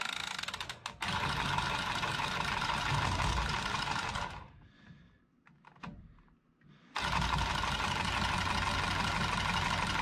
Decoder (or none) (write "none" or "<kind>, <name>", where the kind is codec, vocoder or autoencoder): none